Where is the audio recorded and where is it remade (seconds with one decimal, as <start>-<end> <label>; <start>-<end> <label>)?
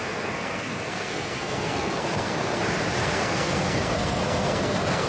0.0-2.6 remade; 2.6-3.0 recorded; 3.0-5.1 remade